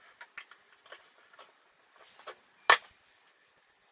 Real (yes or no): yes